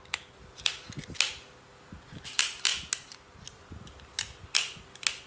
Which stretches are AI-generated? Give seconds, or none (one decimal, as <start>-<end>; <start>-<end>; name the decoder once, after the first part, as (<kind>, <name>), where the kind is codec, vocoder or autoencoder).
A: none